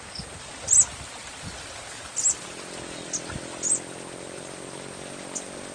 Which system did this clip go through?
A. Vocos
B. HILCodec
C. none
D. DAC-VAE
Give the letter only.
C